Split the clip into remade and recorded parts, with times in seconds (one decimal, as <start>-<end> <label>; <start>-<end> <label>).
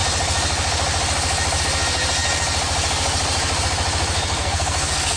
0.0-4.4 recorded; 4.4-5.2 remade